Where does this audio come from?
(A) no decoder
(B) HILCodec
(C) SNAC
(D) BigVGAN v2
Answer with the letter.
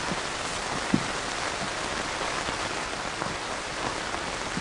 A